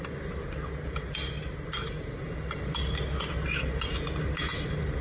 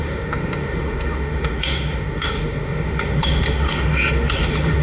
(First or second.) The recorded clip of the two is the first